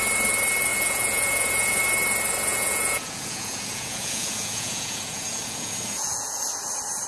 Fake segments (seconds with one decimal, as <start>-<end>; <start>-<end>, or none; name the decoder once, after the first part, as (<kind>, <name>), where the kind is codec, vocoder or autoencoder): 0.7-1.8 (vocoder, Vocos); 2.5-6.4